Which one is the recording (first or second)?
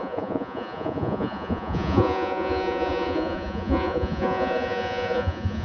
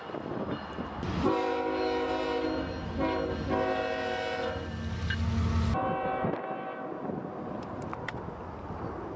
second